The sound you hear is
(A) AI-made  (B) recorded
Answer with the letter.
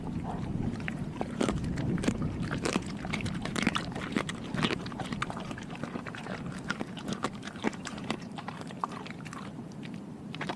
A